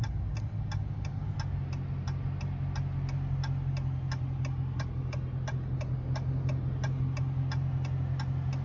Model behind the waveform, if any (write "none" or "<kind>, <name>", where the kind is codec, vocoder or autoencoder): none